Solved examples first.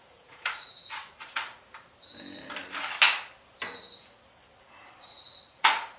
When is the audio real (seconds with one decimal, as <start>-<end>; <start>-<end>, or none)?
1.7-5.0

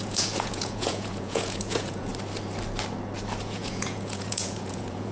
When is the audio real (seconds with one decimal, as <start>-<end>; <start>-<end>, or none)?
2.1-3.4

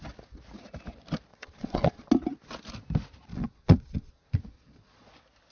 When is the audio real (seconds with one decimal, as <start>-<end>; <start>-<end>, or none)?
0.0-1.3; 2.1-3.3; 5.1-5.5